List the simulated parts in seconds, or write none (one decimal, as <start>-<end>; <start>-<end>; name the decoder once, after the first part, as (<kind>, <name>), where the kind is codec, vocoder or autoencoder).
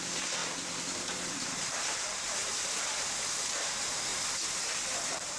0.0-0.4 (vocoder, BigVGAN v2); 1.3-2.4; 3.0-4.1; 4.9-5.4